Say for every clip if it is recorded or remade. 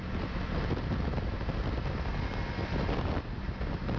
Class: recorded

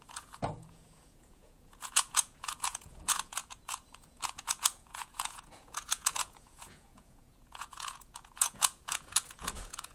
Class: remade